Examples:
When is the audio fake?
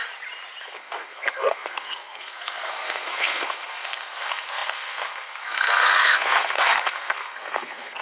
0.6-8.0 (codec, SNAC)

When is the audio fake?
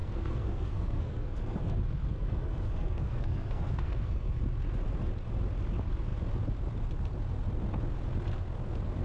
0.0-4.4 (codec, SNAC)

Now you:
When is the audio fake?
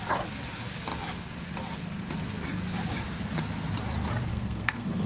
4.3-5.1 (codec, SNAC)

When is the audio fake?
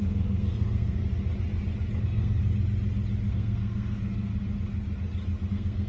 0.0-1.0 (codec, SNAC); 2.0-2.4; 3.3-4.3; 5.5-5.9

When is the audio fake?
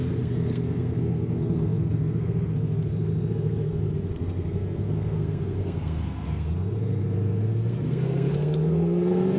0.0-9.4 (codec, SNAC)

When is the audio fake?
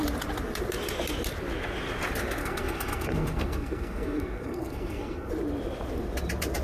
2.4-5.3 (codec, SNAC)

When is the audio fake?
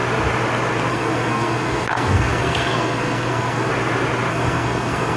0.9-3.7 (codec, SNAC); 4.3-5.2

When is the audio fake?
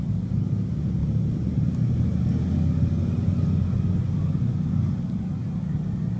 none